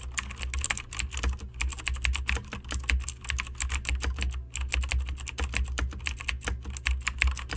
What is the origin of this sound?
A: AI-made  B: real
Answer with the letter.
B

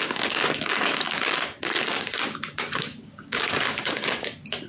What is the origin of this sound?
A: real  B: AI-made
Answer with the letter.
B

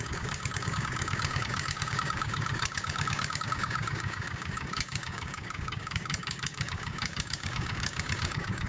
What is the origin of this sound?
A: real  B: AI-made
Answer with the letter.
B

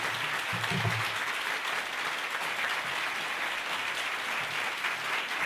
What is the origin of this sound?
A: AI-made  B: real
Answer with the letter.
B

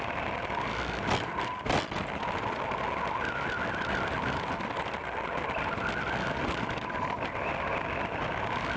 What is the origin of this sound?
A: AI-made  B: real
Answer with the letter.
B